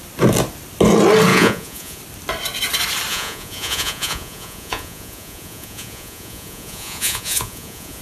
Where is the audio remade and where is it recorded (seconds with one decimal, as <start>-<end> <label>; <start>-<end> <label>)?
0.0-1.3 recorded; 1.3-2.0 remade; 2.0-3.1 recorded; 3.1-8.0 remade

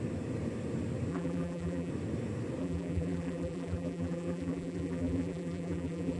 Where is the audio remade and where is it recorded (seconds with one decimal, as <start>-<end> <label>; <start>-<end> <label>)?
0.0-1.1 recorded; 1.1-1.9 remade; 1.9-2.6 recorded; 2.6-6.2 remade

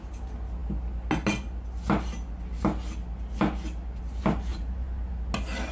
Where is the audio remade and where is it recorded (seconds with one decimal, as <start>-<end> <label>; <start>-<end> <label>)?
0.0-4.5 recorded; 4.5-5.1 remade; 5.1-5.7 recorded

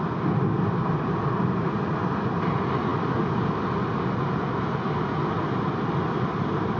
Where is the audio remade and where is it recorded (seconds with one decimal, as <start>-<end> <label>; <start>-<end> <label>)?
0.0-6.8 recorded

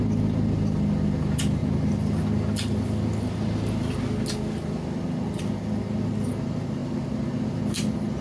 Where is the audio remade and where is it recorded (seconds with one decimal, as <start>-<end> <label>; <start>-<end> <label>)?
0.0-1.6 recorded; 1.6-2.2 remade; 2.2-8.2 recorded

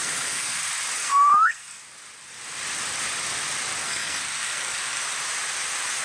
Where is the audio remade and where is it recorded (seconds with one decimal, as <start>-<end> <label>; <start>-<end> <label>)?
0.0-0.6 remade; 0.6-1.0 recorded; 1.0-1.8 remade; 1.8-3.8 recorded; 3.8-5.0 remade; 5.0-6.0 recorded

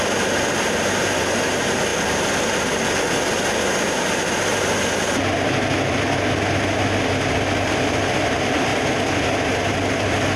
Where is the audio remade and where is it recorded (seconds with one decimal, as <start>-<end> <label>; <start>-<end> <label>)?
0.0-8.7 recorded; 8.7-9.2 remade; 9.2-10.4 recorded